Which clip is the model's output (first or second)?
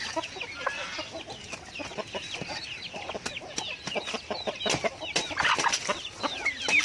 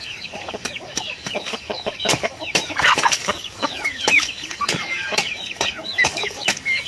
second